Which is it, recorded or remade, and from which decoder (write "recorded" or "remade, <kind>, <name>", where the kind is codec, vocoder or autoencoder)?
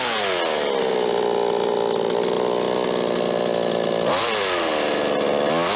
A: recorded